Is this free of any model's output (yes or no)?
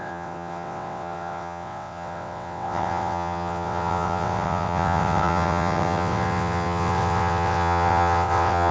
no